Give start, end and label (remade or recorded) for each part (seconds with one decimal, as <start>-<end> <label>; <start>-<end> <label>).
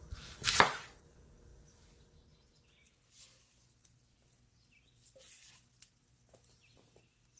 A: 0.0-7.4 recorded